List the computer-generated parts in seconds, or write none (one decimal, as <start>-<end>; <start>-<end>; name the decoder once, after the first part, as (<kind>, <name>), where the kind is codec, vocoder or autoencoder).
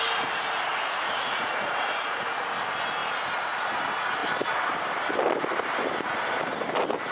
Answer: 0.7-2.5 (vocoder, Vocos); 3.0-3.8